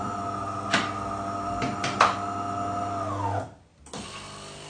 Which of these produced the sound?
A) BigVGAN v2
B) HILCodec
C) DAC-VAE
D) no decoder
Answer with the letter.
D